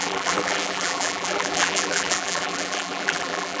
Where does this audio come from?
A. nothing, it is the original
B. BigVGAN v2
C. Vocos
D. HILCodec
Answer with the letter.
B